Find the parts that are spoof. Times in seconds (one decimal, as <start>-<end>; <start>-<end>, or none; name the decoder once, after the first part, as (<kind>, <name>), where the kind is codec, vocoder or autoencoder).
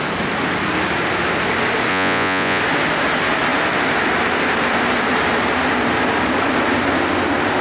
1.9-2.6 (vocoder, Vocos)